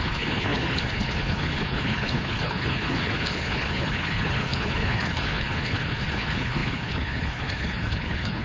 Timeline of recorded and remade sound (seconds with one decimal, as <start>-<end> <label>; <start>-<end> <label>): 0.0-8.4 remade